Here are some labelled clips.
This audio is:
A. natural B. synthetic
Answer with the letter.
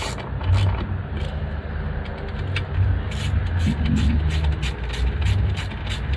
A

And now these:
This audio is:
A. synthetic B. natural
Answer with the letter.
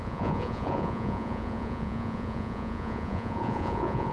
A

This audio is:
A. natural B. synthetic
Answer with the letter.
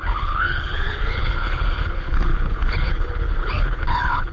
B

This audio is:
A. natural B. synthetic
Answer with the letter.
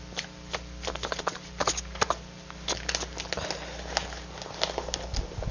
A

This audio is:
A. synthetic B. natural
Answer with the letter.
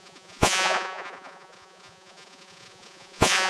A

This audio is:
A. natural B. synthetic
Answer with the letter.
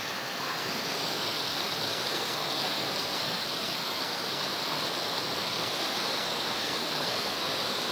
B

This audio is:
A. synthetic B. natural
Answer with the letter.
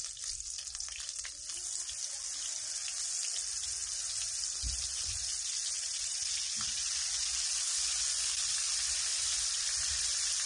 B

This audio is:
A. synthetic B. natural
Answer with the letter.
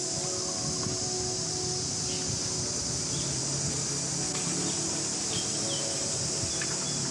B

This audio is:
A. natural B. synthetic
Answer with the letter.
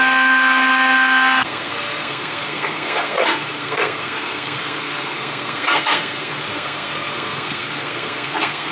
B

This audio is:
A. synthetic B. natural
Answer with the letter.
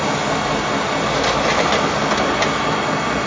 B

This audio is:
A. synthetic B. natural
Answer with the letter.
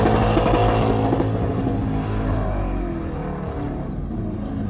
B